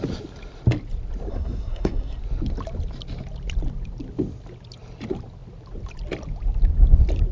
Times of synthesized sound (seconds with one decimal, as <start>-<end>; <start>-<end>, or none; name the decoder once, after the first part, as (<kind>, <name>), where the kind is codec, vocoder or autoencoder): 1.3-2.2 (codec, SNAC)